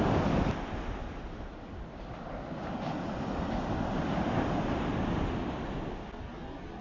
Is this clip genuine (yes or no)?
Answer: yes